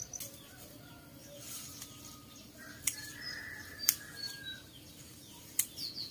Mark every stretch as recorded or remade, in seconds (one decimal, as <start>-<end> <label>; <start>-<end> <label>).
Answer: 0.0-6.1 recorded